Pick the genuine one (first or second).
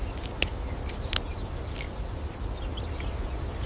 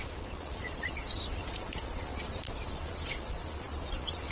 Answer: first